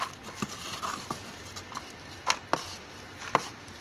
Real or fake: real